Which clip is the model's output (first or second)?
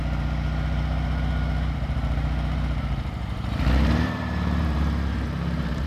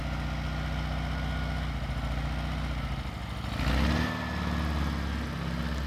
first